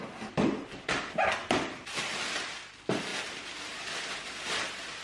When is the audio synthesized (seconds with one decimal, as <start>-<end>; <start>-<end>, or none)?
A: none